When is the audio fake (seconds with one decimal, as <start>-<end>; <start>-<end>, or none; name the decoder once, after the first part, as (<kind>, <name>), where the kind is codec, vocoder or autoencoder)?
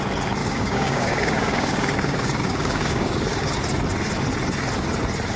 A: 0.4-3.6 (codec, DAC)